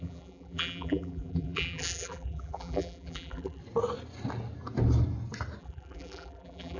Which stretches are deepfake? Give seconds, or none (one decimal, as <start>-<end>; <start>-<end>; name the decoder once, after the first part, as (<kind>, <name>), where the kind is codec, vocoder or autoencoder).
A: 0.0-3.6 (vocoder, BigVGAN v2); 5.6-6.8